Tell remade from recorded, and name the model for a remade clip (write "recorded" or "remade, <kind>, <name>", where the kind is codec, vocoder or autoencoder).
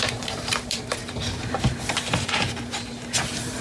remade, vocoder, BigVGAN v2